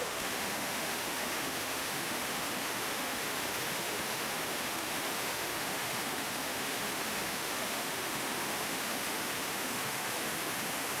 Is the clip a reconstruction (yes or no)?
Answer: yes